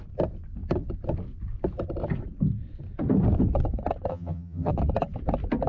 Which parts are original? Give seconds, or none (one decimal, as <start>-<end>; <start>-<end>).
0.0-4.1; 4.7-5.7

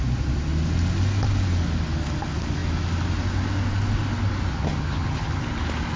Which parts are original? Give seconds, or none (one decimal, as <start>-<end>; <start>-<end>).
0.0-4.5; 5.4-6.0

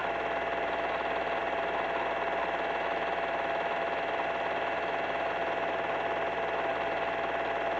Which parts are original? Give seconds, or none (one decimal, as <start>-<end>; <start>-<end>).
0.0-7.8